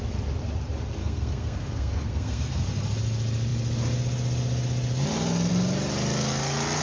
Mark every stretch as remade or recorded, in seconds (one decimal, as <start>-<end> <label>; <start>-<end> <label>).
0.0-1.0 recorded; 1.0-2.6 remade; 2.6-6.8 recorded